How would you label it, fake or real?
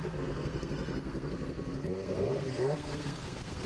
fake